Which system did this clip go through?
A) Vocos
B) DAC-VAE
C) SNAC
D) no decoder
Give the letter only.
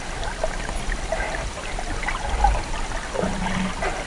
D